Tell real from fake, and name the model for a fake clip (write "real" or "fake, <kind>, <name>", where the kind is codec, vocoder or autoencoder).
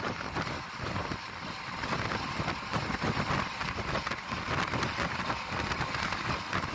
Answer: real